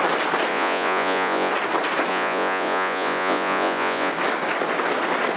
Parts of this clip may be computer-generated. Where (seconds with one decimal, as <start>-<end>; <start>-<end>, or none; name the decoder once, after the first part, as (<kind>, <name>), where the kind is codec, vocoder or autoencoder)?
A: 0.5-1.5 (vocoder, Vocos); 2.1-4.1